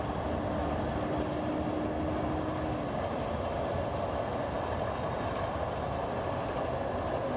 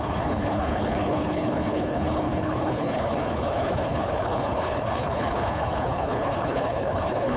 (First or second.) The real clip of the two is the first